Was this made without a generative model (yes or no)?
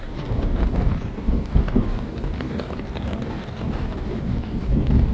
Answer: no